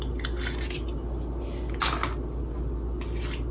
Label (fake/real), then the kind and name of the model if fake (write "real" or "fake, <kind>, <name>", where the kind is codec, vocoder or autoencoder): real